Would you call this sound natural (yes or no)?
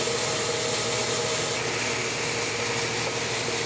yes